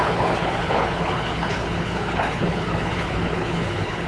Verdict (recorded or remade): remade